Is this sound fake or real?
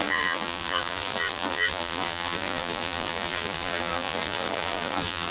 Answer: fake